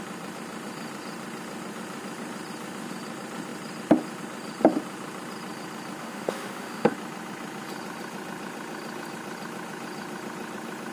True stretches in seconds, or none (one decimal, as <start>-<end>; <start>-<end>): 0.0-6.0; 6.9-10.9